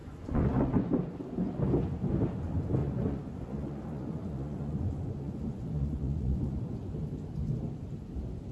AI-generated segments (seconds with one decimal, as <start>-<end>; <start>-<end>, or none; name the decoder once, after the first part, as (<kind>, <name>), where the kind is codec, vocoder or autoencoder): 0.0-0.9 (vocoder, Vocos); 2.8-6.7

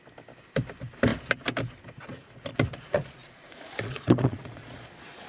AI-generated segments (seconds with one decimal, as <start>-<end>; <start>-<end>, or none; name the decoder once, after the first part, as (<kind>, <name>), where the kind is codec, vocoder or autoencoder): 2.5-5.3 (vocoder, Vocos)

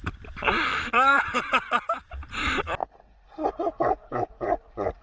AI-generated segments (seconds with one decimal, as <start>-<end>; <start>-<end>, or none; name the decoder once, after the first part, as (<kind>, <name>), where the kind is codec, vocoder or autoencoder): 0.7-1.8 (vocoder, Vocos)